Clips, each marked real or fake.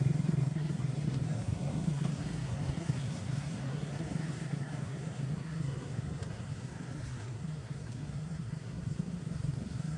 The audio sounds fake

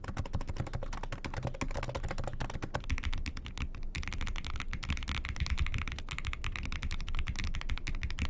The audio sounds real